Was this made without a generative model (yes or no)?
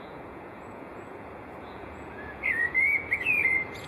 no